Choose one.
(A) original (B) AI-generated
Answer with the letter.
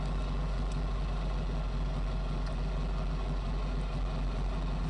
A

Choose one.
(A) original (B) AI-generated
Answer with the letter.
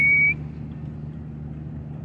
A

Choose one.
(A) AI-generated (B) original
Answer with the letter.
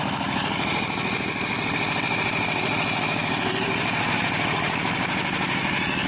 A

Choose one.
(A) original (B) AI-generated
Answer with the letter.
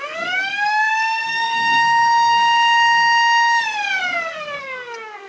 B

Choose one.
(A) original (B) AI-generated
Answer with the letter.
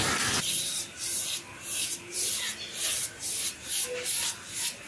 A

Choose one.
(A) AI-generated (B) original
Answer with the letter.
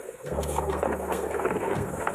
A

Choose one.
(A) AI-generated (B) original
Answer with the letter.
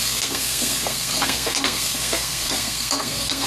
A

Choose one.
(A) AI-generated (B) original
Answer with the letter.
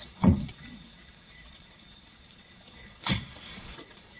A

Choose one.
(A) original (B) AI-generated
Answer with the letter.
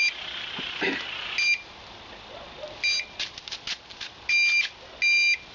A